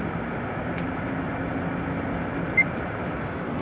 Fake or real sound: real